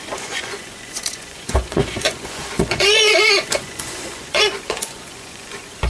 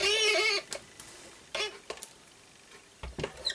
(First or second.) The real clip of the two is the second